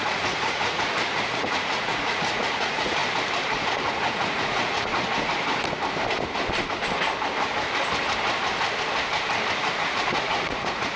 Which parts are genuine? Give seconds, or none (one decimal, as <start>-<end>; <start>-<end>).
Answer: 3.0-3.5; 4.9-9.7